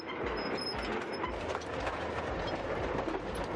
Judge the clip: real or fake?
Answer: real